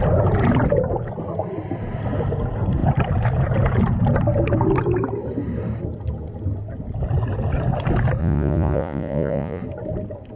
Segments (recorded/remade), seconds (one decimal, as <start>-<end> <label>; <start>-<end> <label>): 0.0-8.2 recorded; 8.2-9.6 remade; 9.6-10.4 recorded